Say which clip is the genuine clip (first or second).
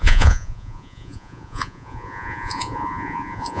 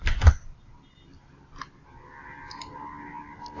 second